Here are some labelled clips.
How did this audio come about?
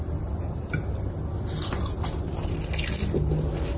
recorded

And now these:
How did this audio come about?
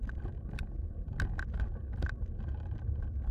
recorded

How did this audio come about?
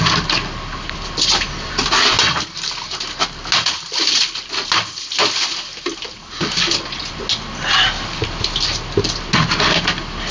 recorded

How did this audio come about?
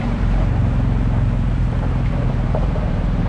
remade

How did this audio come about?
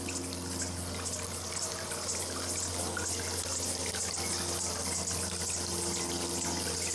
recorded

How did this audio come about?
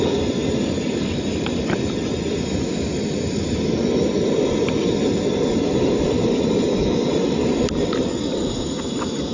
recorded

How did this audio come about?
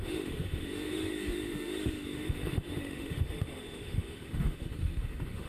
remade